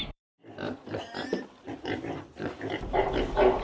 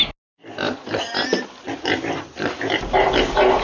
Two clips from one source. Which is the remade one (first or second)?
first